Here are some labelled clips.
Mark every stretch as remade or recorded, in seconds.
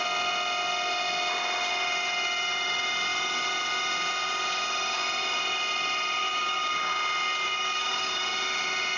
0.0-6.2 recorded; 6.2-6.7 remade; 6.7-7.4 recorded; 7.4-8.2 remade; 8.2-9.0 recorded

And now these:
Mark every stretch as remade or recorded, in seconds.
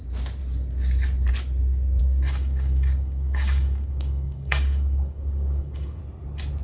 0.0-2.0 recorded; 2.0-6.0 remade; 6.0-6.6 recorded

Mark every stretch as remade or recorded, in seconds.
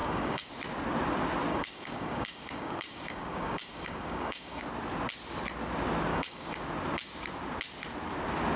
0.0-0.5 remade; 0.5-1.5 recorded; 1.5-4.6 remade; 4.6-6.1 recorded; 6.1-6.6 remade; 6.6-8.6 recorded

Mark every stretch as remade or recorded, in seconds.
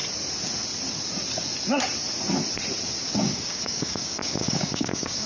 0.0-3.2 recorded; 3.2-5.3 remade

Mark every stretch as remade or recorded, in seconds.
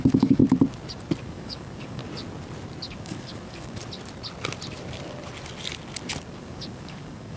0.0-0.4 remade; 0.4-1.2 recorded; 1.2-2.0 remade; 2.0-2.9 recorded; 2.9-3.8 remade; 3.8-6.4 recorded; 6.4-7.4 remade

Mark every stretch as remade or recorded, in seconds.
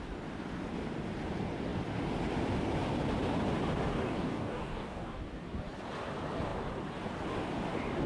0.0-3.9 recorded; 3.9-5.2 remade; 5.2-8.1 recorded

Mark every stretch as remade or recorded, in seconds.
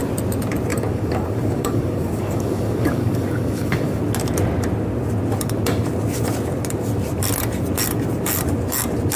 0.0-0.7 recorded; 0.7-4.0 remade; 4.0-9.2 recorded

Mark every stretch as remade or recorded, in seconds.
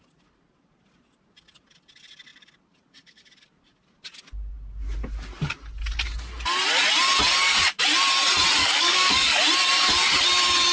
0.0-8.6 recorded; 8.6-9.4 remade; 9.4-10.7 recorded